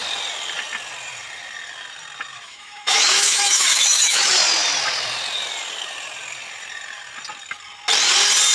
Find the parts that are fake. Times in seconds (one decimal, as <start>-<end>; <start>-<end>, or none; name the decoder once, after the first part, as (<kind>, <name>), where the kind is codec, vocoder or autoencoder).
2.3-4.3 (autoencoder, DAC-VAE)